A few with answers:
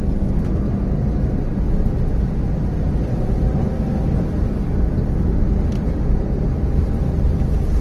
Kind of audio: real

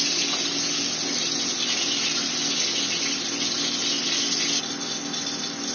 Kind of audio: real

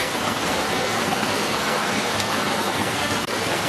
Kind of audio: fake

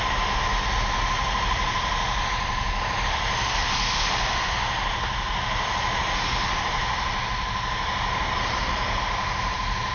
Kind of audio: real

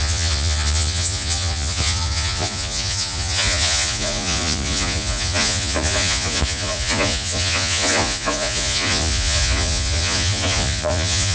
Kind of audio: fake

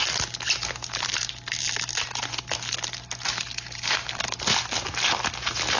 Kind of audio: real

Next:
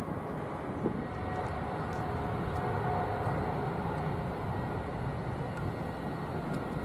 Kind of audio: real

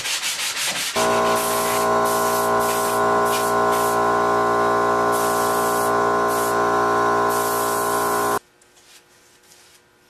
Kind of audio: real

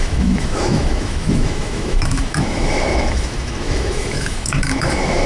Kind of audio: fake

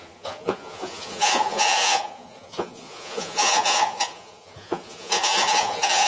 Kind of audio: fake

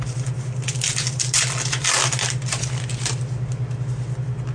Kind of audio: real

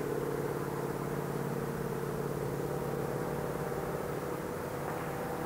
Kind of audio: real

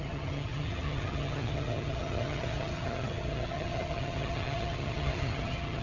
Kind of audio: fake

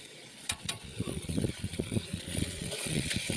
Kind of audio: fake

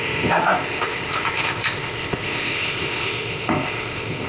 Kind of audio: fake